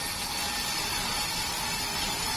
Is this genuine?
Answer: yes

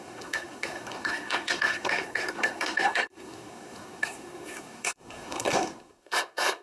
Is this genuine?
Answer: no